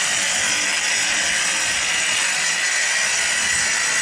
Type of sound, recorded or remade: recorded